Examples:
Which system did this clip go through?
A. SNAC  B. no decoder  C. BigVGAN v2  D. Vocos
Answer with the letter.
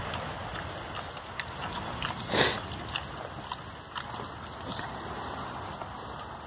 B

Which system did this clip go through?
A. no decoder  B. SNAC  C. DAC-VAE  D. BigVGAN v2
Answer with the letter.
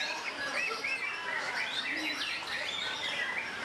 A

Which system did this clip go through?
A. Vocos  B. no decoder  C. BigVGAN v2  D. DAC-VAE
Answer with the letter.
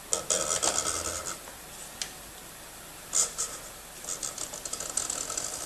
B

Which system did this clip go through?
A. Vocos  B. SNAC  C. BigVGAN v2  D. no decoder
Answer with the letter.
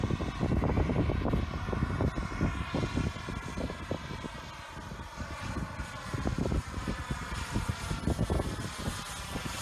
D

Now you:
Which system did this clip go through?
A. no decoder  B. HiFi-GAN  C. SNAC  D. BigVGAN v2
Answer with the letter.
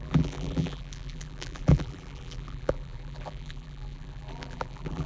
D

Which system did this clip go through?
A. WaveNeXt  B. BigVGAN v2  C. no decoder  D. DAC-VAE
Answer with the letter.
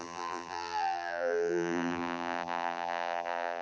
B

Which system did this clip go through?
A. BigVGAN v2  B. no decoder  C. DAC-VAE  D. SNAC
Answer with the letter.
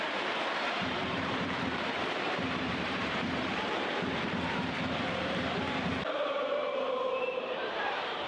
A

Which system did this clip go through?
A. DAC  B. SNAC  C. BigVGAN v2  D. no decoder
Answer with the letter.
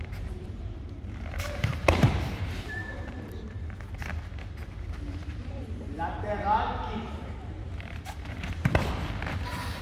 C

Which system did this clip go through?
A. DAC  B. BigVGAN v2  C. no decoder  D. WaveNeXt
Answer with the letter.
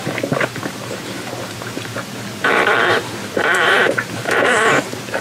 B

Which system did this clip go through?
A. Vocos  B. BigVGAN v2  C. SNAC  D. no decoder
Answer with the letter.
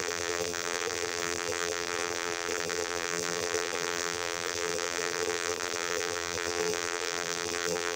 B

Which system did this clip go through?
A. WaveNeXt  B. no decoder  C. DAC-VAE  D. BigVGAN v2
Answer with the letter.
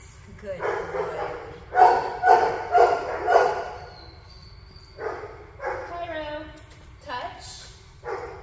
B